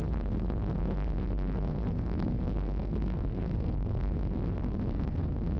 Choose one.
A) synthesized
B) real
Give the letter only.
A